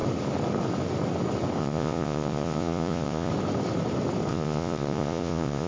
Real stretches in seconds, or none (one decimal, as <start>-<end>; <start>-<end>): 0.0-1.6; 3.3-4.3